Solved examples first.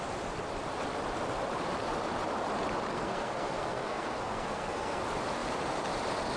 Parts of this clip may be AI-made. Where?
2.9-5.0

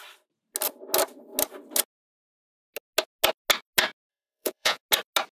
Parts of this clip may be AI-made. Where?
4.1-4.8

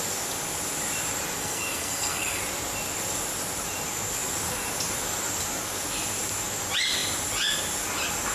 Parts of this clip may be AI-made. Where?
1.4-2.4